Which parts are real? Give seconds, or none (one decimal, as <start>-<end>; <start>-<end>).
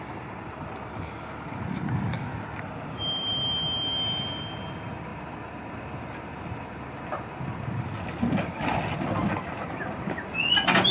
0.0-10.9